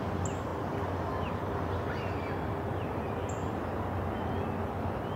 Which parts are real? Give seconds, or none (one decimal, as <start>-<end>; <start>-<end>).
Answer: 0.0-5.2